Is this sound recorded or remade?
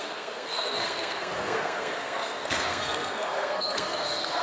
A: remade